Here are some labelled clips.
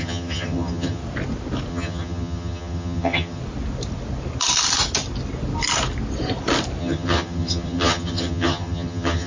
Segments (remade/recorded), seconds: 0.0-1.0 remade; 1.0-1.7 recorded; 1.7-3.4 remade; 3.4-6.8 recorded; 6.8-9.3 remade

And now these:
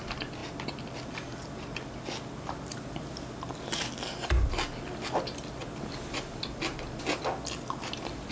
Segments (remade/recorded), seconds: 0.0-8.3 recorded

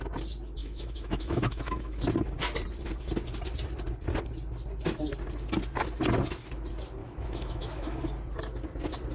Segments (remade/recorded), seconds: 0.0-0.6 recorded; 0.6-2.0 remade; 2.0-7.0 recorded; 7.0-8.0 remade; 8.0-9.1 recorded

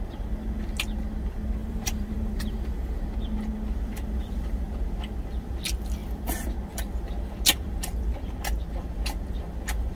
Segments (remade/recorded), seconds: 0.0-1.6 recorded; 1.6-3.0 remade; 3.0-10.0 recorded

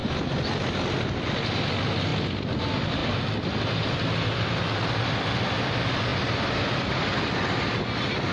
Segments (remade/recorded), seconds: 0.0-8.3 recorded

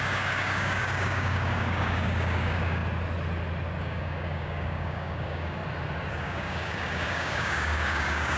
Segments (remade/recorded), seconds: 0.0-2.8 remade; 2.8-3.8 recorded; 3.8-5.6 remade; 5.6-6.1 recorded; 6.1-8.4 remade

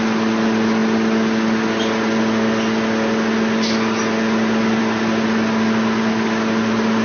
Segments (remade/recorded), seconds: 0.0-7.0 recorded

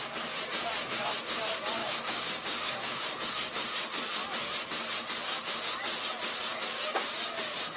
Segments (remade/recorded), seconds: 0.0-1.8 recorded; 1.8-3.3 remade; 3.3-6.5 recorded; 6.5-7.1 remade; 7.1-7.8 recorded